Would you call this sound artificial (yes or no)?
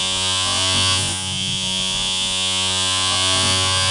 yes